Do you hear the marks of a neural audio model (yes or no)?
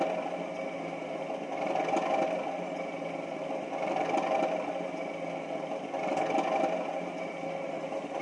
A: no